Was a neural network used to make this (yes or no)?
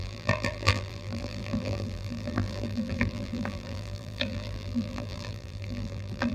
yes